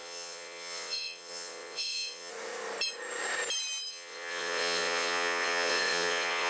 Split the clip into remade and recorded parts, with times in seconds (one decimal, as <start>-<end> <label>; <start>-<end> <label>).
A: 0.0-2.3 remade; 2.3-3.9 recorded; 3.9-6.5 remade